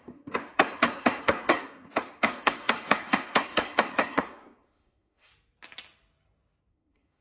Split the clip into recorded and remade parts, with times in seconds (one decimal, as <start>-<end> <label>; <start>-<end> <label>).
0.0-5.3 remade; 5.3-6.7 recorded; 6.7-7.2 remade